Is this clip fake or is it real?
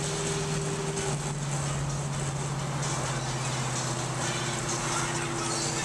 real